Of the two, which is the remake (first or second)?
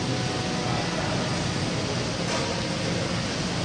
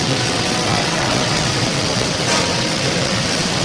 second